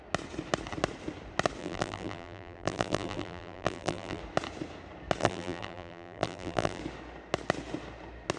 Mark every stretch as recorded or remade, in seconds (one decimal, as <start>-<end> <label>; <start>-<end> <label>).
0.0-1.6 recorded; 1.6-4.2 remade; 4.2-5.2 recorded; 5.2-6.8 remade; 6.8-8.4 recorded